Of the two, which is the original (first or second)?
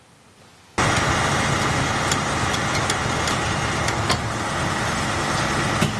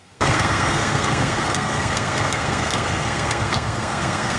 first